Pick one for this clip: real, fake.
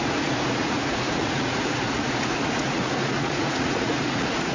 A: fake